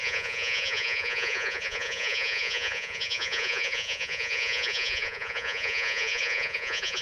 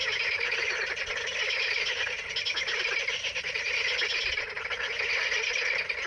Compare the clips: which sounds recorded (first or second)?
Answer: second